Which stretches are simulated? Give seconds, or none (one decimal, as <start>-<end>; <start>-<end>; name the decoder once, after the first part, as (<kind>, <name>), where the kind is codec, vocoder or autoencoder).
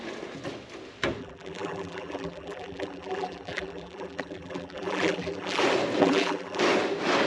1.2-5.6 (vocoder, BigVGAN v2); 6.0-6.6